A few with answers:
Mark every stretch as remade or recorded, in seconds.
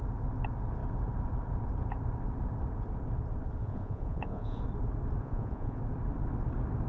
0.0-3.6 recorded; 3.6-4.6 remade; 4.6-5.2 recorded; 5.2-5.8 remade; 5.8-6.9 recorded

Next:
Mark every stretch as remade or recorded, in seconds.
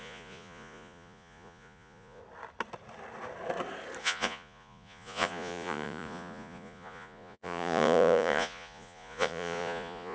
0.0-2.2 remade; 2.2-4.0 recorded; 4.0-10.1 remade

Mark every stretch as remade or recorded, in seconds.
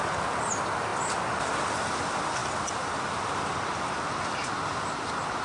0.0-5.4 recorded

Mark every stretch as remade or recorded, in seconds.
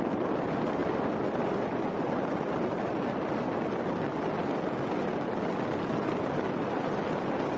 0.0-7.6 recorded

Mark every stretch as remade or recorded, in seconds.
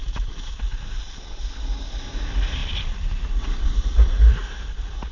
0.0-5.1 recorded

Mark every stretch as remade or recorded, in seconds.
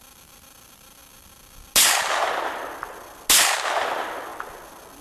0.0-5.0 recorded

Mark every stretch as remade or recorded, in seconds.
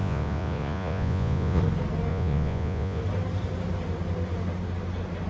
0.0-1.6 remade; 1.6-2.1 recorded; 2.1-3.0 remade; 3.0-5.3 recorded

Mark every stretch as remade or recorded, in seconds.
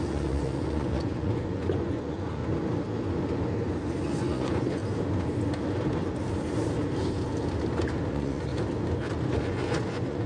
0.0-2.4 remade; 2.4-4.0 recorded; 4.0-4.8 remade; 4.8-8.1 recorded; 8.1-8.5 remade; 8.5-9.3 recorded; 9.3-10.3 remade